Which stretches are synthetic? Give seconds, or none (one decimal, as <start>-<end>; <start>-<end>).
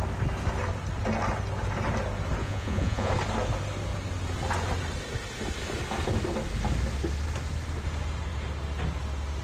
2.4-3.1